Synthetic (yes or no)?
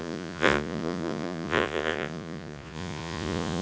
yes